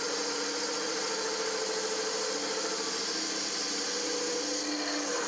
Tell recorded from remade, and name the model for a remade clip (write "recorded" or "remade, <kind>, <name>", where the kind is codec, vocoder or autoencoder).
recorded